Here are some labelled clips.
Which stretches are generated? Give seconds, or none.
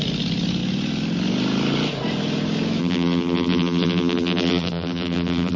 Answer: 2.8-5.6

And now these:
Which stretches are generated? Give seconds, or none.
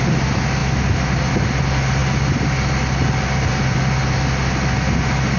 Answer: 2.0-3.5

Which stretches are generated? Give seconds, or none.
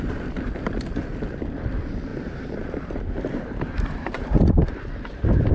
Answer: 2.1-5.5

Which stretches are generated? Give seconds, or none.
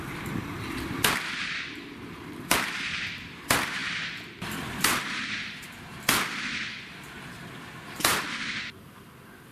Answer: 0.0-9.5